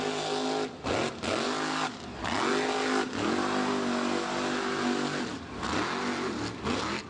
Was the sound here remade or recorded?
recorded